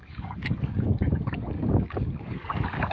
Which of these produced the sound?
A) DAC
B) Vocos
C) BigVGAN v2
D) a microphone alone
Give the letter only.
A